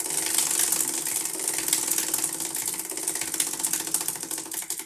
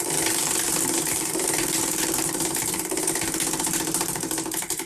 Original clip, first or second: first